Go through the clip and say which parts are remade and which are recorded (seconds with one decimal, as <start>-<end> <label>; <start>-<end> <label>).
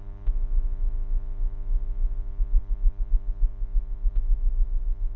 0.0-5.2 recorded